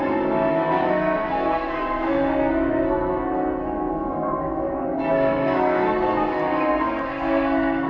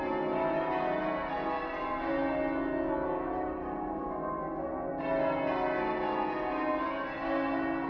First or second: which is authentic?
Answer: second